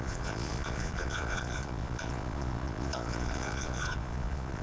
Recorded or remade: remade